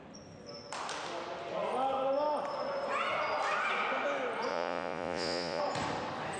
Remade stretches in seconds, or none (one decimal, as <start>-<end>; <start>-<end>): 4.5-5.6